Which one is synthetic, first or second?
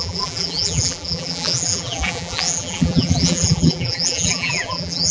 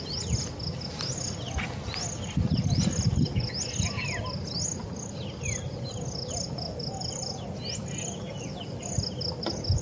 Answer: first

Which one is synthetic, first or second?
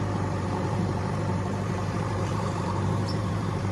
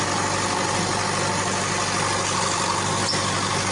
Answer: first